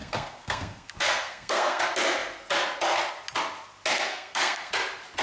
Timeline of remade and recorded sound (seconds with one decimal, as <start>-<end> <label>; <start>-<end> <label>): 0.0-1.8 remade; 1.8-4.1 recorded; 4.1-4.7 remade; 4.7-5.2 recorded